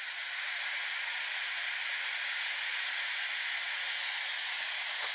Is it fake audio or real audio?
fake